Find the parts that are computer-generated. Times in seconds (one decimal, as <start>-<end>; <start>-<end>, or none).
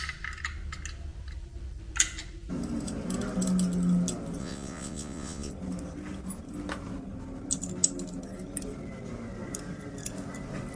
4.4-5.5